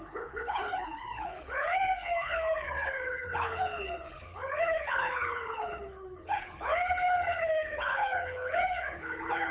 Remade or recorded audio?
remade